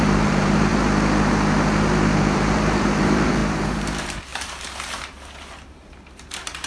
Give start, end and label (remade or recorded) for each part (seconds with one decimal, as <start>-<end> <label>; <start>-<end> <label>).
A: 0.0-0.7 remade; 0.7-2.2 recorded; 2.2-6.7 remade